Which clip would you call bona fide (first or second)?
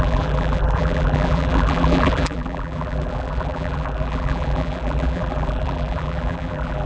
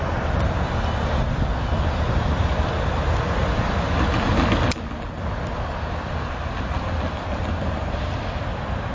second